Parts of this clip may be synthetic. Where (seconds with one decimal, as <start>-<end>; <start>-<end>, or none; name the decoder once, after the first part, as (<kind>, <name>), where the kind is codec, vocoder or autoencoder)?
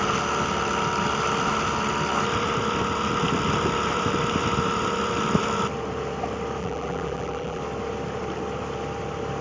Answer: 6.6-7.6 (vocoder, BigVGAN v2)